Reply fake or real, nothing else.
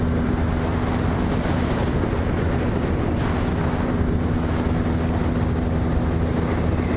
real